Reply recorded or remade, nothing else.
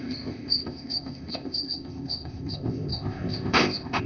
remade